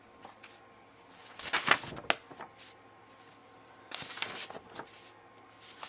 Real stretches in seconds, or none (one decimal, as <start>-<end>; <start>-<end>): 0.0-3.4; 4.1-5.9